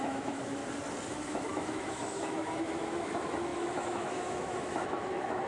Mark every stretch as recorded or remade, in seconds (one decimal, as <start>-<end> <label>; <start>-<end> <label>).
0.0-0.6 remade; 0.6-1.1 recorded; 1.1-5.5 remade